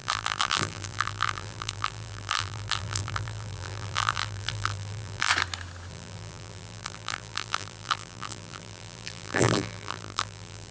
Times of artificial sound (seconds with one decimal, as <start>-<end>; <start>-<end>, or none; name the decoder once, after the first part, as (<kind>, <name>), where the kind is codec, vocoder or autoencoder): 0.0-5.3 (vocoder, BigVGAN v2); 5.9-10.7